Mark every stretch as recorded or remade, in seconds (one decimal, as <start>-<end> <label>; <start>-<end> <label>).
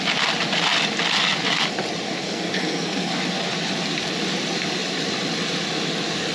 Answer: 0.0-2.2 recorded; 2.2-3.1 remade; 3.1-6.3 recorded